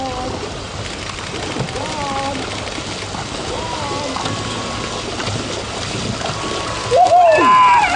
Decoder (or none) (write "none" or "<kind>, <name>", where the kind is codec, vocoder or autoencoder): none